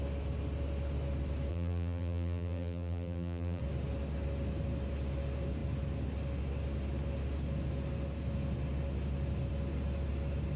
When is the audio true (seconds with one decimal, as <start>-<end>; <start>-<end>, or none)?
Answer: 0.0-1.5; 3.6-10.6